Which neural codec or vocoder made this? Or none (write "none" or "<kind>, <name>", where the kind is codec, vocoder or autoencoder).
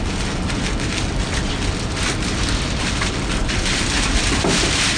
none